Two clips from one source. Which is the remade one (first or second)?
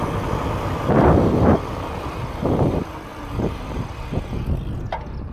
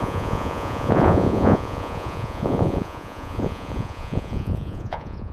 second